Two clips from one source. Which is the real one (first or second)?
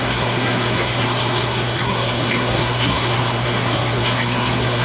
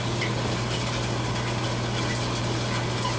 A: second